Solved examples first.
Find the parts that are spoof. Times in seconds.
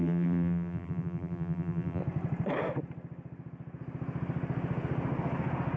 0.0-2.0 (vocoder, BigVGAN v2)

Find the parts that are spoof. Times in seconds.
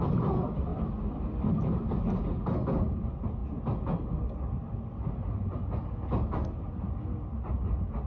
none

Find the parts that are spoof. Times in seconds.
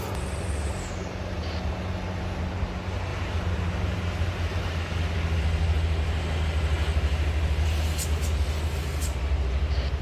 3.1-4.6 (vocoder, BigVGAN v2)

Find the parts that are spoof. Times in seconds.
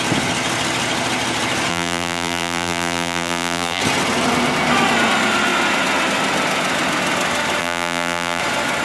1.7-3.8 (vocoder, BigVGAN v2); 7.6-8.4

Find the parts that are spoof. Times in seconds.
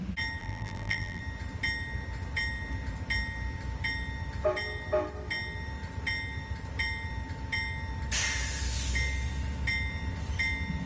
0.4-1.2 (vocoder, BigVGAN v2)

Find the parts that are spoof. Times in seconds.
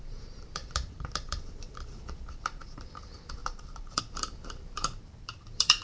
0.0-5.8 (vocoder, BigVGAN v2)